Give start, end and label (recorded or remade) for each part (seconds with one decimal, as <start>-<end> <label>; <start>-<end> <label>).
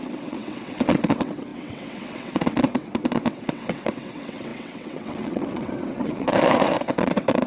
0.0-7.5 remade